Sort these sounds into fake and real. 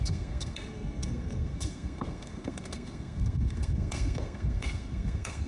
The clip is fake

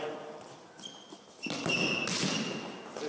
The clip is real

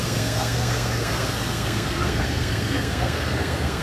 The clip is fake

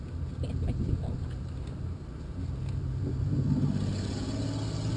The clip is real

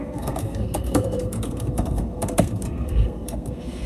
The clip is fake